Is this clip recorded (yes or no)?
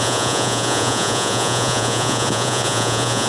no